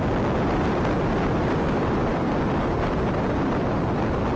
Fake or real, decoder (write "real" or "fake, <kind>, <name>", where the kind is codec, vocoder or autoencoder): real